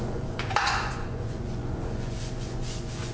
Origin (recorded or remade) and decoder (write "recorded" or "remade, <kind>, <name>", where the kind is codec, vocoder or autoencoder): remade, vocoder, Vocos